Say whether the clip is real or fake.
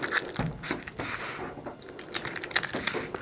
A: real